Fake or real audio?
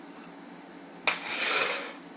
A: real